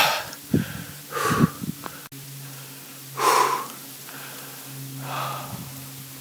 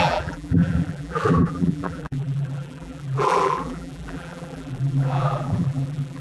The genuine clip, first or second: first